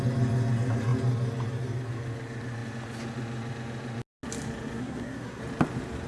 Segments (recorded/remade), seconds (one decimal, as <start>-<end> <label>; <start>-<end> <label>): 0.0-4.8 recorded; 4.8-5.4 remade; 5.4-6.1 recorded